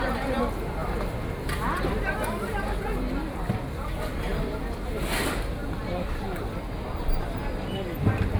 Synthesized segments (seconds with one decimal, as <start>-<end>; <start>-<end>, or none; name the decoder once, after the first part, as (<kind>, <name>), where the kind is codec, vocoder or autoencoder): 0.8-1.6 (vocoder, BigVGAN v2); 4.3-7.1